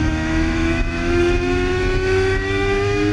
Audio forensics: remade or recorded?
remade